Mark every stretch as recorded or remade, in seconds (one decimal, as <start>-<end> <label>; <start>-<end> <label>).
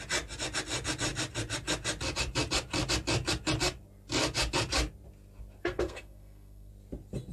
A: 0.0-5.6 recorded; 5.6-6.7 remade; 6.7-7.3 recorded